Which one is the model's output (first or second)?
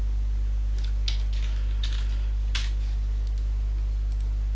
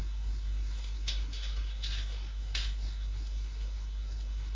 second